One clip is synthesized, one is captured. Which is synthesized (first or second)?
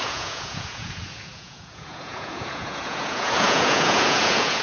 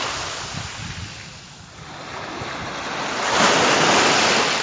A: first